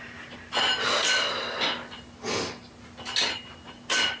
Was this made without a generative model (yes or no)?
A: yes